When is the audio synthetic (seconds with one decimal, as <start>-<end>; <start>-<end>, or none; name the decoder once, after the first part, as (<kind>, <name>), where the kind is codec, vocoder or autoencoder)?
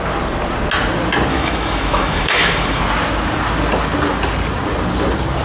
1.3-2.8 (autoencoder, DAC-VAE)